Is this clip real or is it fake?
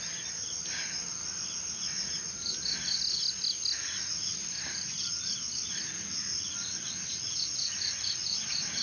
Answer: real